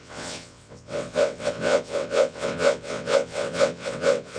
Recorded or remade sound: remade